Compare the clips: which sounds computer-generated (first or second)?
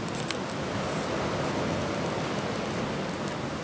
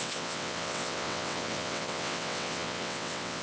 second